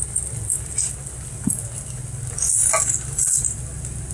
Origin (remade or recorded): recorded